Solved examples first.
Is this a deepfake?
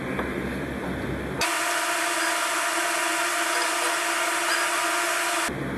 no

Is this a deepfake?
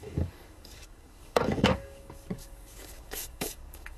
yes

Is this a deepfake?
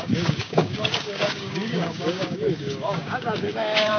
yes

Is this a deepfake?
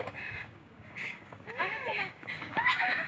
yes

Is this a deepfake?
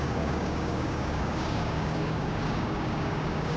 yes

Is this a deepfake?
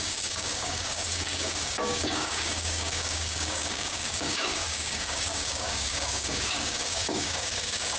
yes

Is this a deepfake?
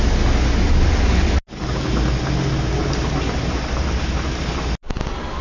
no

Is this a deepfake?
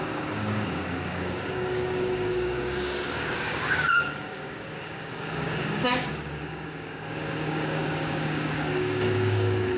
yes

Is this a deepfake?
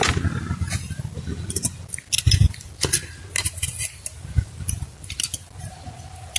no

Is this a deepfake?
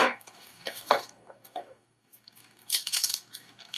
yes